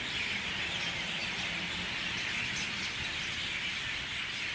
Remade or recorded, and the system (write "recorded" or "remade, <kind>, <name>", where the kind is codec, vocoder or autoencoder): recorded